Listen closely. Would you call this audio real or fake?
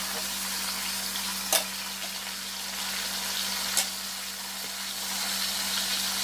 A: real